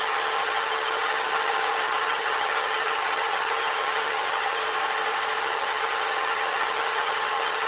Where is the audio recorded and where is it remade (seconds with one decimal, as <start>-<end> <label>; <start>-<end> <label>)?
0.0-4.6 remade; 4.6-5.4 recorded; 5.4-7.7 remade

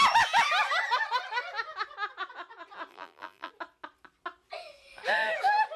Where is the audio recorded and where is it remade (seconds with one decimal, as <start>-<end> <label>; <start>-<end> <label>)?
0.0-2.9 recorded; 2.9-3.5 remade; 3.5-5.8 recorded

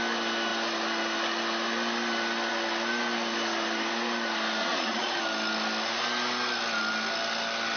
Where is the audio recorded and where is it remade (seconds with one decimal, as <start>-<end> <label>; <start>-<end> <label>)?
0.0-4.6 recorded; 4.6-5.2 remade; 5.2-7.8 recorded

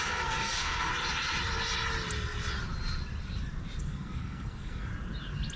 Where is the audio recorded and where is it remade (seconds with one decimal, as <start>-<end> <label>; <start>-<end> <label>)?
0.0-0.9 remade; 0.9-3.8 recorded; 3.8-4.9 remade; 4.9-5.6 recorded

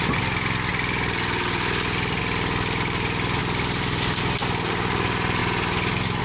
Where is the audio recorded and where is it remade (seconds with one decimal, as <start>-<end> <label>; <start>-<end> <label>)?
0.0-0.7 recorded; 0.7-2.2 remade; 2.2-3.4 recorded; 3.4-4.2 remade; 4.2-6.2 recorded

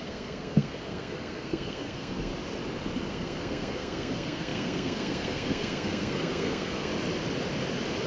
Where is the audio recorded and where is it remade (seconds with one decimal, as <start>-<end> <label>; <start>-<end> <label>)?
0.0-2.3 remade; 2.3-3.1 recorded; 3.1-6.9 remade; 6.9-8.1 recorded

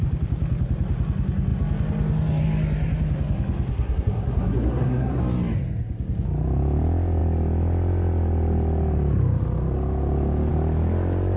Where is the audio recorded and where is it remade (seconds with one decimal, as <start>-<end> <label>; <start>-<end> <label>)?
0.0-3.7 recorded; 3.7-5.2 remade; 5.2-11.4 recorded

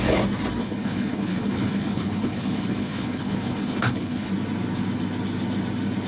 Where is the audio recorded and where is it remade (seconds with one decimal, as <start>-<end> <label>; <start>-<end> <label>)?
0.0-0.6 recorded; 0.6-4.3 remade; 4.3-6.1 recorded